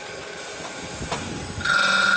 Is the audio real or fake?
real